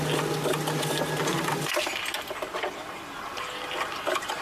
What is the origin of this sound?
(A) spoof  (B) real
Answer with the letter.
B